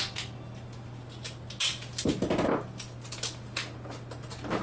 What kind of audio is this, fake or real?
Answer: real